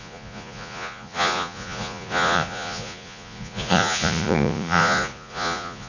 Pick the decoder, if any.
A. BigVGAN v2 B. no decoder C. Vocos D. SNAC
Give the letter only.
C